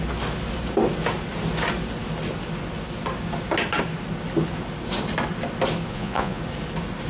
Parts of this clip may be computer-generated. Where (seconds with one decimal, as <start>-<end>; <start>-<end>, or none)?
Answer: 5.9-6.4